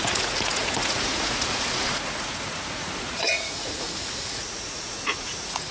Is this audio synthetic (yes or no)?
yes